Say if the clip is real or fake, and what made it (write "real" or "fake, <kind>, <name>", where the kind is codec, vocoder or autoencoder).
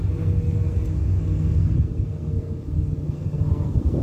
fake, codec, SNAC